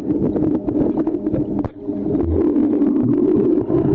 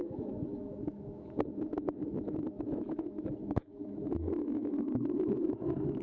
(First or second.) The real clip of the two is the first